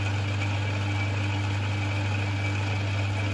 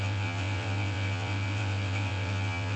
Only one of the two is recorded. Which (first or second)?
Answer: first